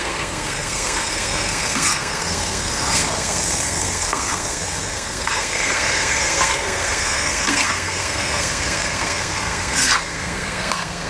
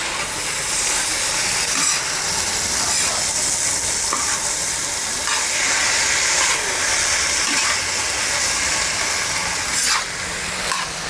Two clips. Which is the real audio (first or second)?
second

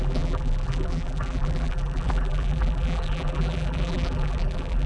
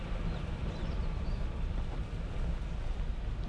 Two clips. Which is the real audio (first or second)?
second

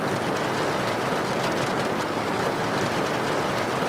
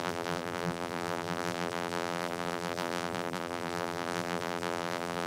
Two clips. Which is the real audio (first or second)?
first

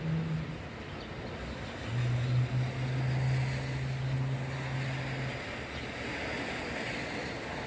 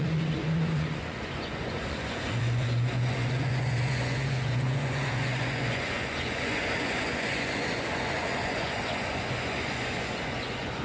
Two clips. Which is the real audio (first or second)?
first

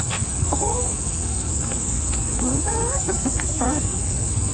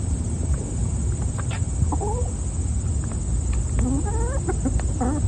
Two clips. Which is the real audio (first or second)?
second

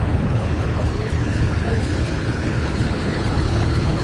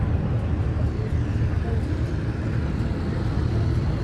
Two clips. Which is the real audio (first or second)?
second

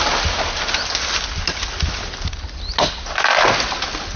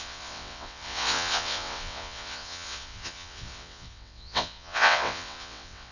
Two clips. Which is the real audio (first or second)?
first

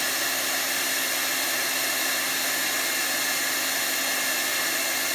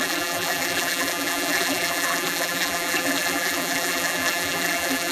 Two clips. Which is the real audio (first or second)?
first